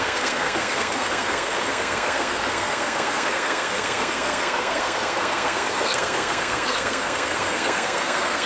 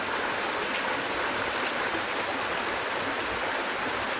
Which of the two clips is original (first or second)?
second